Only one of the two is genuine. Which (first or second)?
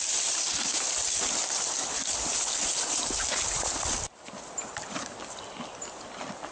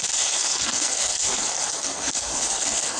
first